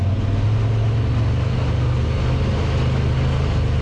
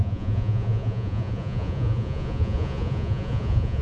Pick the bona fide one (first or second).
first